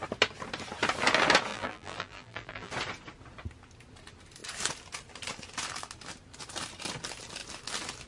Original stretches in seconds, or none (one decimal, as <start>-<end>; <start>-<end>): 0.0-1.5; 2.7-8.1